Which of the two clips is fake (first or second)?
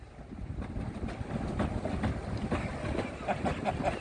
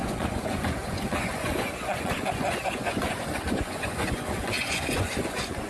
second